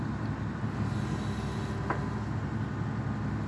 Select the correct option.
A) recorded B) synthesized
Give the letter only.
A